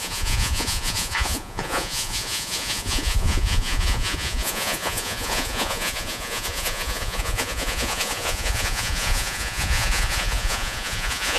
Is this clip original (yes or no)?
no